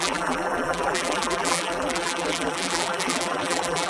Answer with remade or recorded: remade